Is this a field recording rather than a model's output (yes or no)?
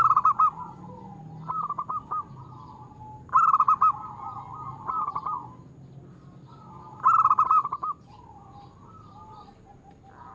yes